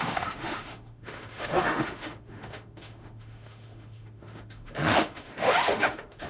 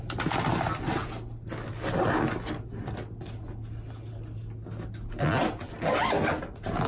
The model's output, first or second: first